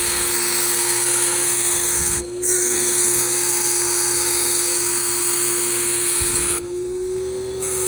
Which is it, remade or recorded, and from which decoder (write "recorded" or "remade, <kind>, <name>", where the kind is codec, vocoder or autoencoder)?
remade, codec, SNAC